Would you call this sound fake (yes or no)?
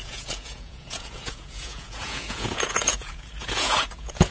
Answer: yes